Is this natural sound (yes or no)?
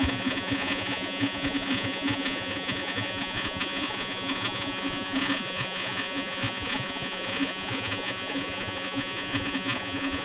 no